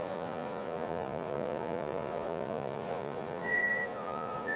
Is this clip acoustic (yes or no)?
no